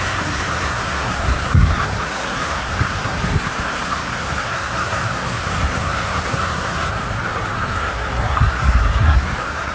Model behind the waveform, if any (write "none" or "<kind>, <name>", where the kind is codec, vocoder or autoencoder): codec, SNAC